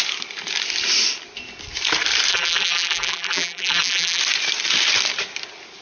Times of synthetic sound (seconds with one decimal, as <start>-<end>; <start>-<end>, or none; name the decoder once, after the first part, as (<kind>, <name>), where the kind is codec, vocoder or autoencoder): 2.3-4.2 (vocoder, BigVGAN v2)